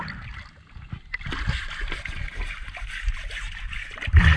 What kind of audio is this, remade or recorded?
recorded